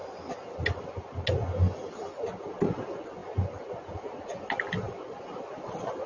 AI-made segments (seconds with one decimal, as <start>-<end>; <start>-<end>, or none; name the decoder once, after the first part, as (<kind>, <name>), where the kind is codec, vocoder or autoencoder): none

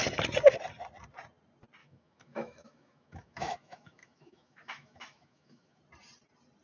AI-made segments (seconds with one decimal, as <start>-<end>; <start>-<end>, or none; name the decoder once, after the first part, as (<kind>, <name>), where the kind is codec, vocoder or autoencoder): 1.8-5.8 (autoencoder, DAC-VAE)

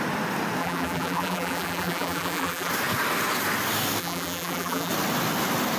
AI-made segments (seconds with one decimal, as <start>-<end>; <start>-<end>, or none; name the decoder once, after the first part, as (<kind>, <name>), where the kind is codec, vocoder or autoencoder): 0.6-2.7 (vocoder, BigVGAN v2); 4.0-4.9

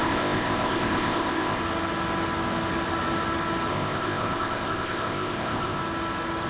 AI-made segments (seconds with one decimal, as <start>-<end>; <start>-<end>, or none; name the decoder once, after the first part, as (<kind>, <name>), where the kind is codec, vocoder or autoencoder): 0.0-1.6 (codec, ZipCodec); 3.7-5.8